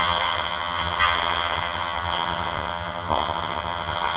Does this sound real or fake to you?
fake